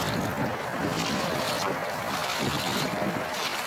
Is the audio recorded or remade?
recorded